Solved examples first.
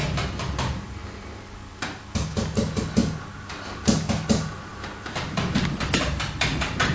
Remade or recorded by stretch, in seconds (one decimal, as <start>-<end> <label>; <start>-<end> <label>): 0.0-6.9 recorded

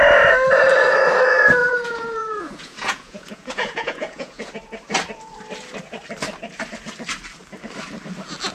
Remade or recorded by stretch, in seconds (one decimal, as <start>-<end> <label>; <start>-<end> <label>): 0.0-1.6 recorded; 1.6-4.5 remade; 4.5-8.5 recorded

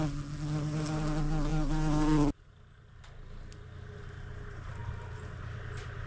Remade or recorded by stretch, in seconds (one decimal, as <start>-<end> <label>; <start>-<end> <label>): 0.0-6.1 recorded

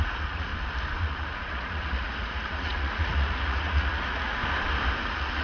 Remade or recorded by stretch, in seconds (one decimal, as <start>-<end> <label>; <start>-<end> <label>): 0.0-0.5 remade; 0.5-1.0 recorded; 1.0-4.4 remade; 4.4-5.0 recorded; 5.0-5.4 remade

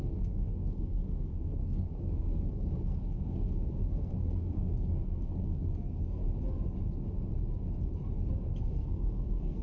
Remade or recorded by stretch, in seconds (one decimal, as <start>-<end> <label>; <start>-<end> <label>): 0.0-6.2 remade; 6.2-8.6 recorded; 8.6-9.6 remade

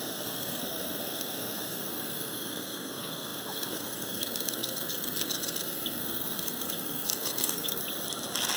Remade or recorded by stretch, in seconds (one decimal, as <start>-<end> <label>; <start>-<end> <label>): 0.0-7.8 remade; 7.8-8.6 recorded

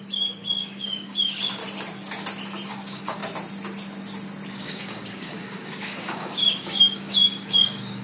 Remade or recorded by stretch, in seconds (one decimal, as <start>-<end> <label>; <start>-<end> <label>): 0.0-1.6 remade; 1.6-2.7 recorded; 2.7-3.2 remade; 3.2-4.5 recorded; 4.5-8.0 remade

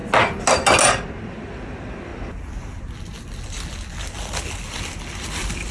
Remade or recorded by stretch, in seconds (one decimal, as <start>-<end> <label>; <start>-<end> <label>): 0.0-1.3 recorded; 1.3-2.1 remade; 2.1-2.6 recorded; 2.6-3.1 remade; 3.1-4.6 recorded; 4.6-5.7 remade